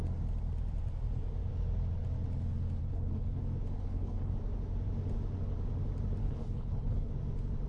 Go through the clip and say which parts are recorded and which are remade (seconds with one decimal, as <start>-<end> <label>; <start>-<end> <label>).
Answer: 0.0-2.8 recorded; 2.8-3.4 remade; 3.4-3.8 recorded; 3.8-4.3 remade; 4.3-6.2 recorded; 6.2-7.1 remade; 7.1-7.7 recorded